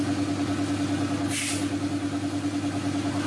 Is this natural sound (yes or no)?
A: yes